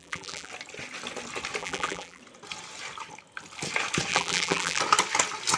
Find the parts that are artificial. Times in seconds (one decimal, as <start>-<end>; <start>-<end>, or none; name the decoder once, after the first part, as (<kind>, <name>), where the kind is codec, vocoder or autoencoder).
0.0-0.5 (vocoder, BigVGAN v2); 1.6-2.2; 4.1-4.8